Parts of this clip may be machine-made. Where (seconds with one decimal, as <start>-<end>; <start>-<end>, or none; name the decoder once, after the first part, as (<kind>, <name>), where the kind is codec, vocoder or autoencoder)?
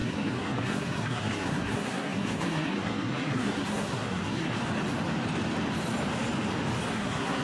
0.0-4.6 (codec, SNAC); 6.9-7.4